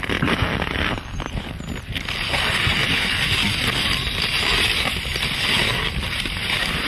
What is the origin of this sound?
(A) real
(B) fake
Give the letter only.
A